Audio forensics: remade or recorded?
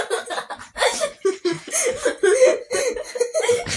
recorded